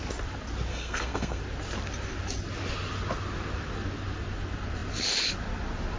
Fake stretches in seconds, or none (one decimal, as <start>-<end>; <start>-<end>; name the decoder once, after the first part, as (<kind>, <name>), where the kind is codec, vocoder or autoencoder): 0.7-1.4 (codec, SNAC)